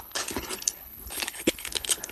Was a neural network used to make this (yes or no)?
yes